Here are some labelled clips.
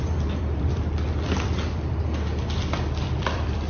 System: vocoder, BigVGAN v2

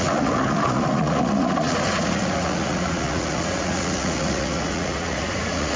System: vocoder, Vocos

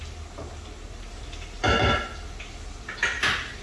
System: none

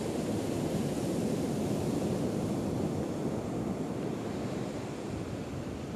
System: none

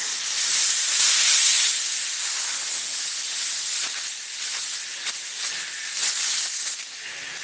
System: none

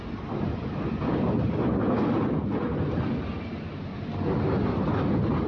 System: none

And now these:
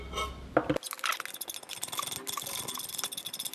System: none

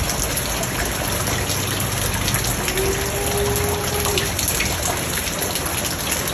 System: none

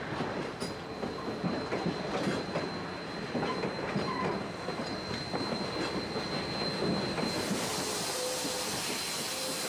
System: none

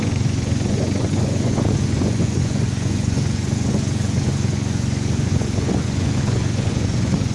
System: vocoder, Vocos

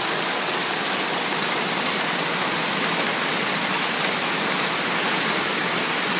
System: none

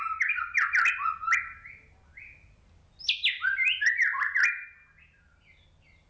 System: none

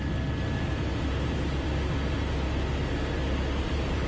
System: none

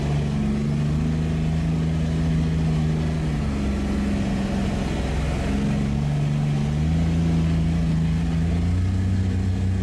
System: none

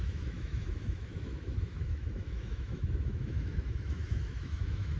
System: autoencoder, DAC-VAE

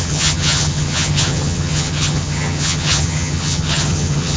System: vocoder, HiFi-GAN